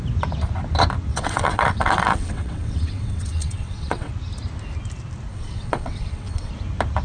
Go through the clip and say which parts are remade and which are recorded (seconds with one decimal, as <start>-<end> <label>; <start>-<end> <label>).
0.0-1.1 recorded; 1.1-4.1 remade; 4.1-5.3 recorded; 5.3-6.5 remade; 6.5-7.0 recorded